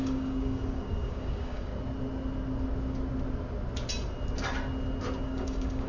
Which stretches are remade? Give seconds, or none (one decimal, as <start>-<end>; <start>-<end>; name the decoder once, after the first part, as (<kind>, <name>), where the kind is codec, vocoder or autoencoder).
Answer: 0.0-1.7 (codec, DAC); 5.2-5.9